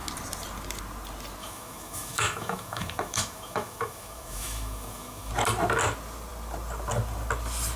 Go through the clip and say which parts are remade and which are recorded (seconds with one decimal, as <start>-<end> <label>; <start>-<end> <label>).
0.0-1.4 recorded; 1.4-5.3 remade; 5.3-7.8 recorded

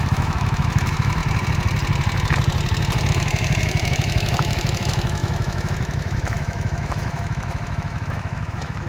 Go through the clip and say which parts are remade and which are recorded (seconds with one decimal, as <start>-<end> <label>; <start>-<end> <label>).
0.0-1.2 remade; 1.2-3.1 recorded; 3.1-8.9 remade

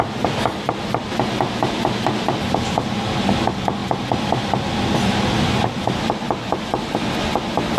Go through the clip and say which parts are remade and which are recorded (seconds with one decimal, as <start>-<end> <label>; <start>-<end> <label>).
0.0-7.8 recorded

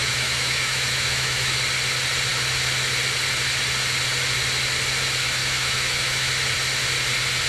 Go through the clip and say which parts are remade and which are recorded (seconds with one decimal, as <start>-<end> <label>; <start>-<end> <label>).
0.0-1.6 remade; 1.6-5.4 recorded; 5.4-6.3 remade; 6.3-7.5 recorded

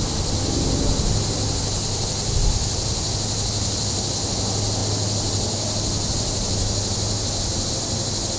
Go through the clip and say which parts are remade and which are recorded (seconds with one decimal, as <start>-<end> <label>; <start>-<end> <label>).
0.0-8.4 recorded